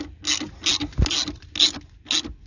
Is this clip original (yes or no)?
yes